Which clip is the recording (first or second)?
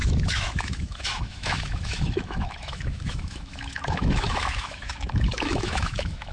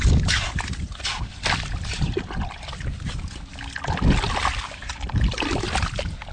second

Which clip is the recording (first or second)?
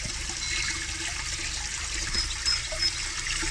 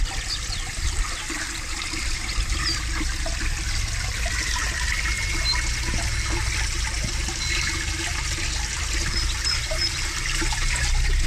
first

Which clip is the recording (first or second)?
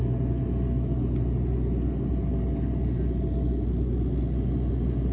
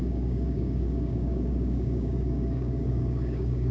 first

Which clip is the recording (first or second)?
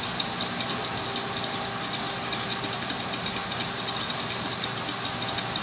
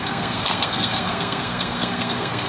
first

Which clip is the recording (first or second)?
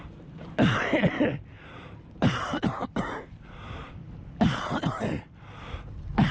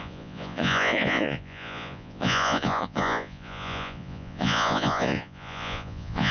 first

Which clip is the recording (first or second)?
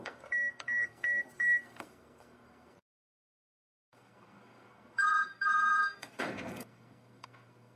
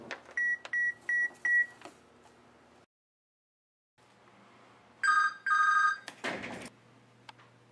second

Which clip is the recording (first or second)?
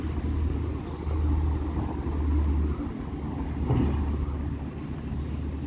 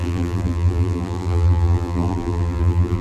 first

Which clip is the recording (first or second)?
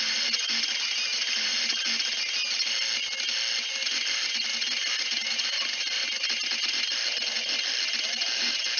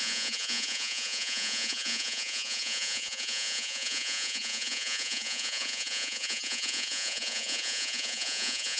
first